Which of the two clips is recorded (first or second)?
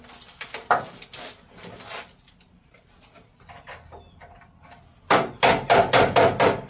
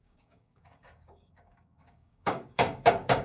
first